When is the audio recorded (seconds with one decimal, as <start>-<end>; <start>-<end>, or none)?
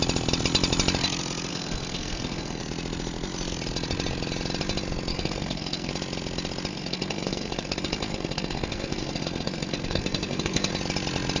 0.0-1.5; 2.6-5.1; 5.9-6.7; 10.7-11.4